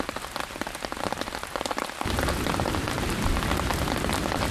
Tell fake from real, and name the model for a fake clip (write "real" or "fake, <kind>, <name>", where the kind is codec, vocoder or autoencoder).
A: real